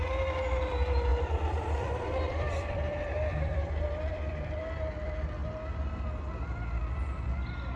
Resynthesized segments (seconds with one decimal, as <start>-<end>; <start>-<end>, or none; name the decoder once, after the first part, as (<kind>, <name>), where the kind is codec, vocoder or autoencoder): 1.1-4.6 (vocoder, BigVGAN v2)